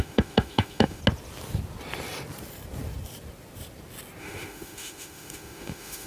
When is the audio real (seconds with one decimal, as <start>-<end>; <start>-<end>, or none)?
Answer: 1.0-4.2